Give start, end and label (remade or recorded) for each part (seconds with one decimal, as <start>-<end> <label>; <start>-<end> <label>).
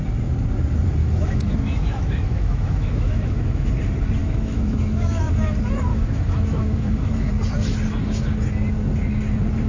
0.0-1.0 recorded; 1.0-3.7 remade; 3.7-4.2 recorded; 4.2-5.3 remade; 5.3-5.9 recorded; 5.9-7.3 remade; 7.3-9.7 recorded